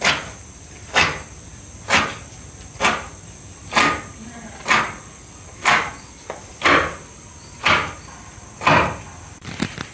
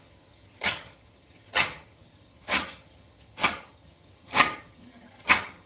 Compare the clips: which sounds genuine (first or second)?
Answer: first